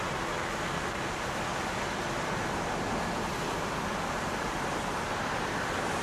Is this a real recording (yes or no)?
no